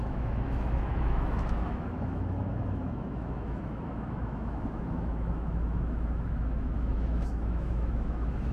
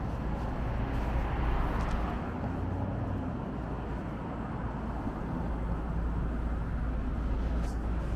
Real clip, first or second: second